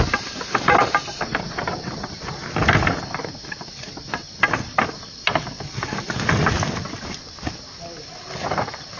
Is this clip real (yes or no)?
yes